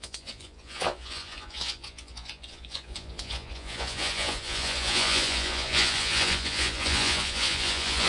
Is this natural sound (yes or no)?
no